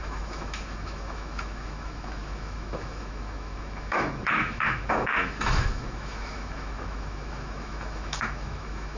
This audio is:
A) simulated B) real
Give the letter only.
A